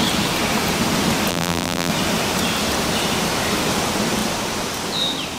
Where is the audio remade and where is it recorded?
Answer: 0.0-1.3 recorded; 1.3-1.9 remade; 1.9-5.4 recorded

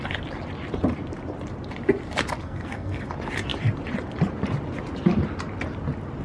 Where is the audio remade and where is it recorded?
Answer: 0.0-2.4 recorded; 2.4-3.0 remade; 3.0-6.2 recorded

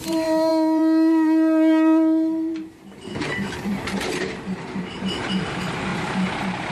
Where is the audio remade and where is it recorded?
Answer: 0.0-6.7 remade

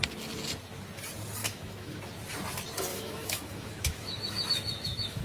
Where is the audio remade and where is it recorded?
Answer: 0.0-1.4 recorded; 1.4-2.0 remade; 2.0-2.9 recorded; 2.9-5.2 remade